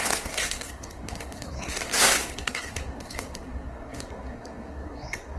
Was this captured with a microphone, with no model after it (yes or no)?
no